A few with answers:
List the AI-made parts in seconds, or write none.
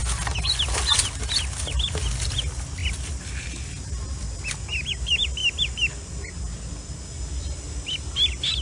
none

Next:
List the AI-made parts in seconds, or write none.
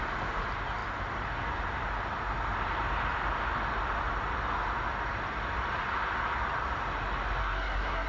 7.4-8.1 (codec, SNAC)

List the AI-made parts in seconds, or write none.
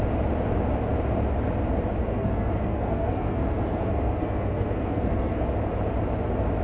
2.0-5.4 (codec, SNAC)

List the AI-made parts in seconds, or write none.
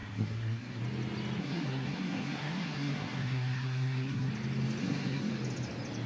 0.0-0.8 (codec, SNAC); 1.4-4.3; 4.8-5.3